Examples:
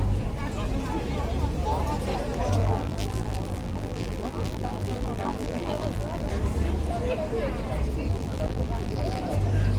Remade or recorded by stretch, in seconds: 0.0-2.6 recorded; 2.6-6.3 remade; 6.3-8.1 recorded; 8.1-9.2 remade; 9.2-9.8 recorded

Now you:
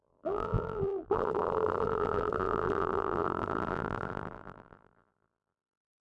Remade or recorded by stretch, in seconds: 0.0-6.1 remade

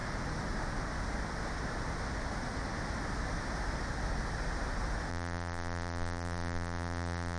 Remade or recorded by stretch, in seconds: 0.0-5.1 recorded; 5.1-7.4 remade

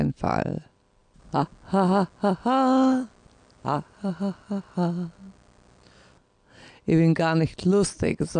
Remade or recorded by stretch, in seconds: 0.0-1.0 recorded; 1.0-1.5 remade; 1.5-3.2 recorded; 3.2-4.1 remade; 4.1-8.4 recorded

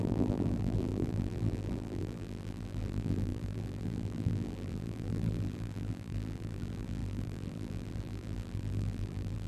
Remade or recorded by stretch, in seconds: 0.0-9.5 remade

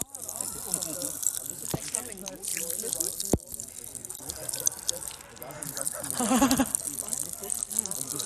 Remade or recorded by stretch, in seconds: 0.0-1.0 recorded; 1.0-2.0 remade; 2.0-8.3 recorded